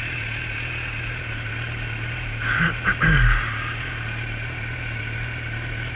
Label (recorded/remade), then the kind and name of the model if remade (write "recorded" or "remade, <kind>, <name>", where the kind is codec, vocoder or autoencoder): recorded